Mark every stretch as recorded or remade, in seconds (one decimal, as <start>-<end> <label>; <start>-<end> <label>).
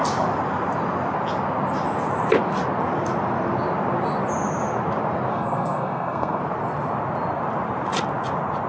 0.0-5.3 recorded; 5.3-6.4 remade; 6.4-8.7 recorded